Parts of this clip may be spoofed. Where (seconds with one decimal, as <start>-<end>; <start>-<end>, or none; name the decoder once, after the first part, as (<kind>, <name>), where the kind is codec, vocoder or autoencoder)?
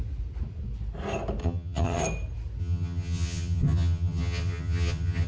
1.4-2.0 (vocoder, HiFi-GAN); 2.6-5.3